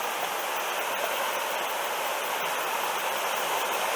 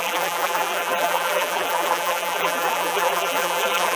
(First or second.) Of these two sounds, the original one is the first